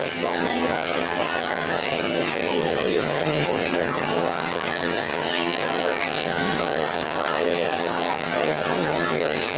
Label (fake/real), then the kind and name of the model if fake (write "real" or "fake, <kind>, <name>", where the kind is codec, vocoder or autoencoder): fake, vocoder, HiFi-GAN